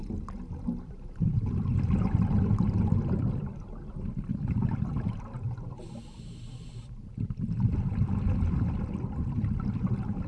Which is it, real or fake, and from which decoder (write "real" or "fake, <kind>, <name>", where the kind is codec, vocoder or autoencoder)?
real